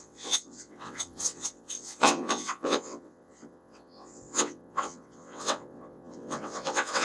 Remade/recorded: remade